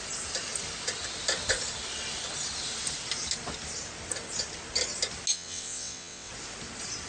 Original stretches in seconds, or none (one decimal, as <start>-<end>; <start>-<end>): 0.0-5.3; 6.3-7.1